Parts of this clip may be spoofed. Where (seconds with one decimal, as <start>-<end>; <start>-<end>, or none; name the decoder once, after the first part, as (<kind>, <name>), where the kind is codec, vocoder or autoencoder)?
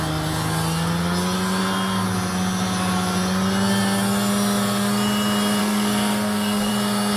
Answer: 5.6-6.7 (codec, SNAC)